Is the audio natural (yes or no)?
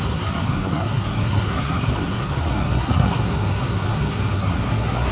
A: no